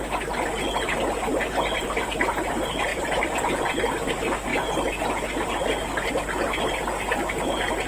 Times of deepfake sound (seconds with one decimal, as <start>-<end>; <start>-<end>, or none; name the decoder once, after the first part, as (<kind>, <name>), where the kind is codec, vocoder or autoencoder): 1.3-2.0 (vocoder, BigVGAN v2); 2.9-4.1